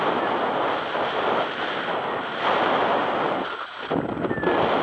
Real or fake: real